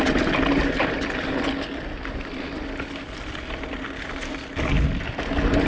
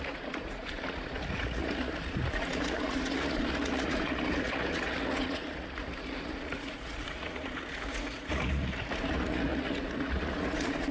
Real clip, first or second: first